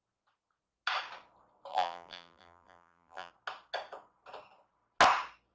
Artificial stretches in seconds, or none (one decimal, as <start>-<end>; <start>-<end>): 1.7-3.3

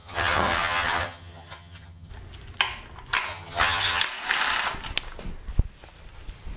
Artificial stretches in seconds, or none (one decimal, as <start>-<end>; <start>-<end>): 0.0-2.1; 3.3-4.0

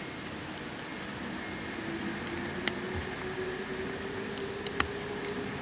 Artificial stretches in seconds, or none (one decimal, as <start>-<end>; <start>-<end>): none

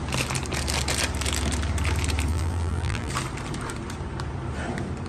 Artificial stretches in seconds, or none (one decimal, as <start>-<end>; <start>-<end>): 2.3-3.1

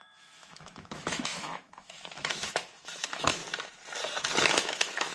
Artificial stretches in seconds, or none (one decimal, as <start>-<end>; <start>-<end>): 0.0-3.4; 4.4-5.1

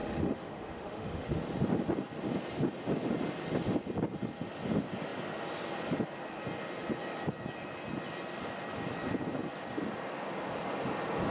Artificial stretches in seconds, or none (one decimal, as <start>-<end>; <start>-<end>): 0.0-1.4

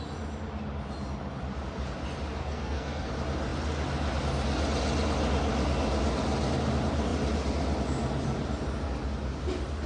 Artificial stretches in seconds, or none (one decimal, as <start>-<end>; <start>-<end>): 2.4-3.1

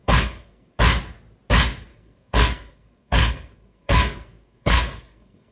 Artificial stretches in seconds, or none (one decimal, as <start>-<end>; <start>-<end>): 0.0-0.8; 1.9-5.5